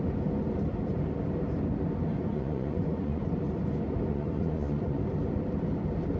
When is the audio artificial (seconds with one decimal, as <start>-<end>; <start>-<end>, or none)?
2.3-3.2; 4.1-5.0